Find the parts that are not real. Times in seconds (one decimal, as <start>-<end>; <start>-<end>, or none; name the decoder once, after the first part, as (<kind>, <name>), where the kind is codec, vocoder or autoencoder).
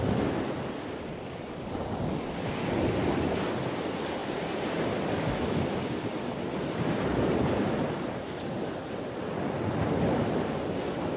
4.2-6.3 (vocoder, BigVGAN v2); 7.1-8.1